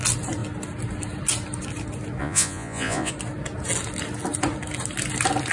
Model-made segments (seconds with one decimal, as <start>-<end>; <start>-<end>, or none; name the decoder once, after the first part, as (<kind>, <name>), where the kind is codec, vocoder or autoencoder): 2.2-3.1 (vocoder, Vocos)